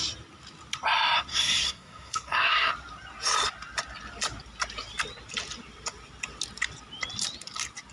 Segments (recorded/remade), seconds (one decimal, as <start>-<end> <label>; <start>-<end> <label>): 0.0-1.3 recorded; 1.3-2.7 remade; 2.7-7.9 recorded